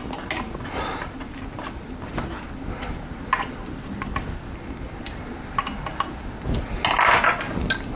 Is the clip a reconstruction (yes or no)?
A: no